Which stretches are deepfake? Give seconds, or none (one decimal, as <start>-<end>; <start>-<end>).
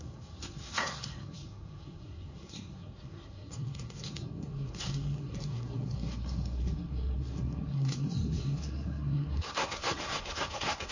0.0-10.9